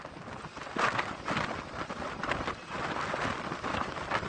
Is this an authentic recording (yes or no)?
yes